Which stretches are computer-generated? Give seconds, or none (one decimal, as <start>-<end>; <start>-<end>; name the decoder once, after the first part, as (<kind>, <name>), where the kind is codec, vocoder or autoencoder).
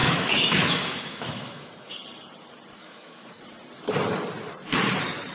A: 0.0-1.9 (autoencoder, DAC-VAE); 2.8-3.4